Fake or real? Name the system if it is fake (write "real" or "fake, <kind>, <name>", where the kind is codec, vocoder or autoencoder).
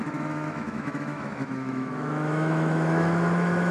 fake, autoencoder, DAC-VAE